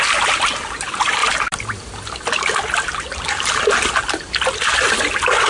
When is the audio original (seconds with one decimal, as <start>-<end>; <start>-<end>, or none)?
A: 0.0-5.5